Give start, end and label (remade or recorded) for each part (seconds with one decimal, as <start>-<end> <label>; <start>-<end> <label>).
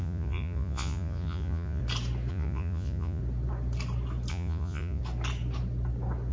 0.0-1.8 remade; 1.8-2.3 recorded; 2.3-3.2 remade; 3.2-4.3 recorded; 4.3-5.0 remade; 5.0-6.3 recorded